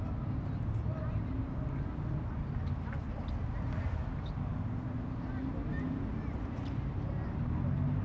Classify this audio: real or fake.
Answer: real